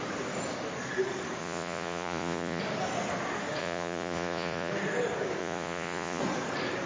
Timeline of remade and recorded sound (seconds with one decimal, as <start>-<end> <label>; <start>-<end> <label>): 0.0-1.4 recorded; 1.4-2.6 remade; 2.6-3.6 recorded; 3.6-4.7 remade; 4.7-5.4 recorded; 5.4-6.2 remade; 6.2-6.9 recorded